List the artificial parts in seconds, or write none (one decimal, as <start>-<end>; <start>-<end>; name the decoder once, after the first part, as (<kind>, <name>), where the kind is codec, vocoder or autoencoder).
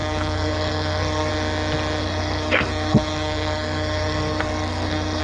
0.0-1.3 (codec, SNAC); 2.0-5.2